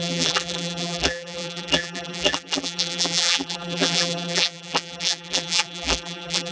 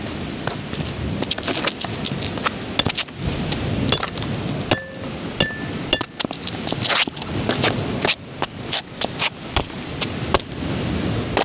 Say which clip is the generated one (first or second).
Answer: first